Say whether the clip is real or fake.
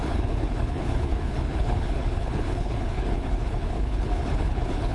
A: fake